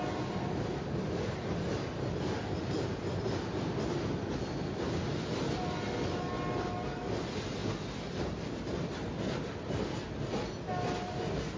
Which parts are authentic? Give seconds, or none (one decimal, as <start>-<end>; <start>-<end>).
0.0-11.6